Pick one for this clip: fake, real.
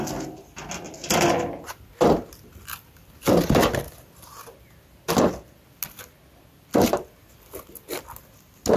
real